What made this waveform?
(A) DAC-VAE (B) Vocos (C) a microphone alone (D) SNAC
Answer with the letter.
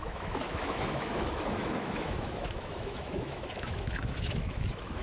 A